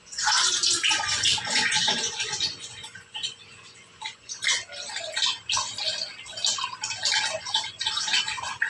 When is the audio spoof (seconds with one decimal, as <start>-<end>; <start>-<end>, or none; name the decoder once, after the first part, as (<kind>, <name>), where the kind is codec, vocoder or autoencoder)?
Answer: 0.0-4.3 (vocoder, Vocos); 7.4-8.7